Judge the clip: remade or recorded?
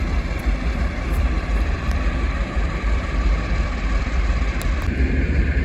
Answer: remade